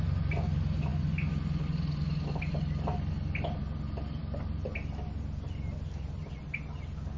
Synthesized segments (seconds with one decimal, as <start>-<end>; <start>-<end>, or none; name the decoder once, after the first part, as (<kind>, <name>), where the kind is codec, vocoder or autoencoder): none